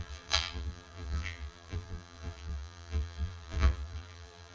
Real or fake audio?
fake